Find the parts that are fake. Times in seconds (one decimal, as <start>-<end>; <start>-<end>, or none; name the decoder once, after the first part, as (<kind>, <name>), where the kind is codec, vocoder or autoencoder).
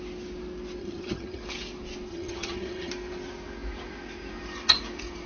0.8-1.4 (vocoder, HiFi-GAN); 2.1-2.9